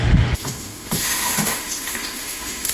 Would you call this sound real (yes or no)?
no